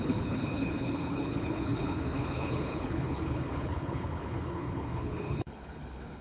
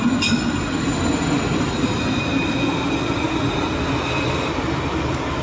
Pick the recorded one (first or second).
second